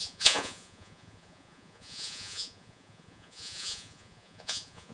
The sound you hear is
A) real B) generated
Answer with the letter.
B